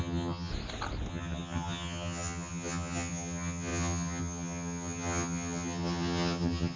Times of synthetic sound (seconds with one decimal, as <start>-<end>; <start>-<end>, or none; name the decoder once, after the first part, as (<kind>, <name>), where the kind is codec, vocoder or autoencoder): 0.0-0.5 (vocoder, HiFi-GAN); 1.1-6.8